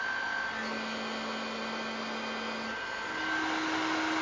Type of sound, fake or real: real